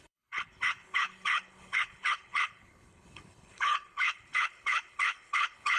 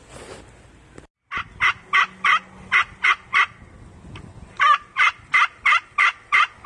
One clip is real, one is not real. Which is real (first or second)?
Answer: second